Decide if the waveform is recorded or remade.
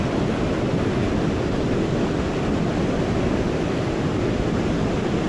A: recorded